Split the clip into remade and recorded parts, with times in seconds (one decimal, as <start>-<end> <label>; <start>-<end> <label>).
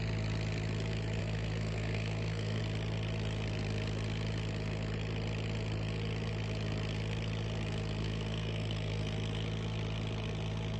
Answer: 0.0-1.2 recorded; 1.2-2.6 remade; 2.6-8.0 recorded; 8.0-9.0 remade; 9.0-10.8 recorded